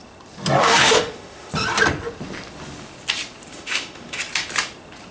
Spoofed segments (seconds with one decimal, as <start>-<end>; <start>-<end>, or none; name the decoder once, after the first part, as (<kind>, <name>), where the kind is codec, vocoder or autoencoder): 0.6-1.5 (autoencoder, DAC-VAE); 3.5-4.2

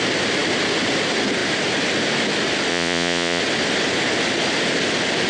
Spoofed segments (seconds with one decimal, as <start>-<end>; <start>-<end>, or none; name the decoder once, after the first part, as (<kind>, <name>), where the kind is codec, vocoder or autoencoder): 2.7-3.4 (vocoder, Vocos)

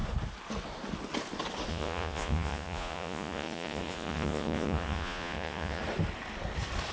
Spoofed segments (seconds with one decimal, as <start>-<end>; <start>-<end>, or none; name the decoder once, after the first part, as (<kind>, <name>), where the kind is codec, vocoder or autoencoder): 1.7-5.8 (vocoder, Vocos)

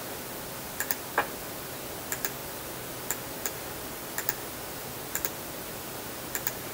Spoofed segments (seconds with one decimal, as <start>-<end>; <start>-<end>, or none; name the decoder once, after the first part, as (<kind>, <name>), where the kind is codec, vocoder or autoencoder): none

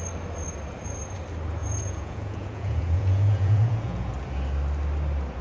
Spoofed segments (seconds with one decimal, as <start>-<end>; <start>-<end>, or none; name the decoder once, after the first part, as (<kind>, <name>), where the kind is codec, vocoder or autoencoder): 1.6-4.1 (vocoder, Vocos)